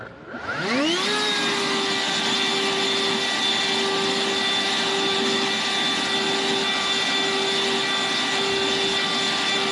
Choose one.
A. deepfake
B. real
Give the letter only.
B